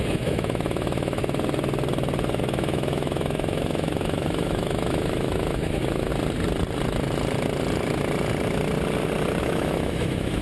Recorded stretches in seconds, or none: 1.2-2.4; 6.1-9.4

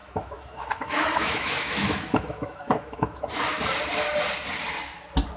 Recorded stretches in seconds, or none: 3.2-5.4